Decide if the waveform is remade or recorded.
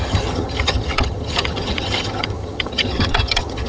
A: remade